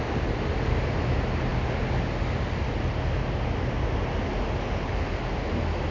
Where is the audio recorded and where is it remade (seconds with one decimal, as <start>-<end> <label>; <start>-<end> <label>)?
0.0-5.9 recorded